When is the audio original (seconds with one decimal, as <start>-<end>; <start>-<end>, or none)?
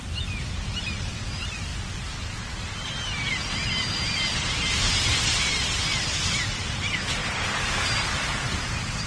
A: 0.0-9.1